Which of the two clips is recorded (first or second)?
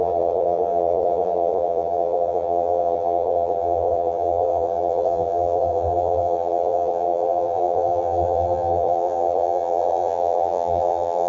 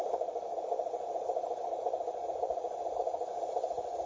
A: second